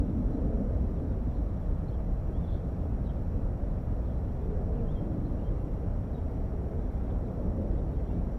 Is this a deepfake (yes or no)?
no